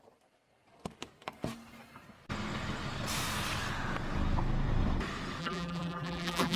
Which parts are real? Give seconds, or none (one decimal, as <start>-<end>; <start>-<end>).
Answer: 0.0-5.4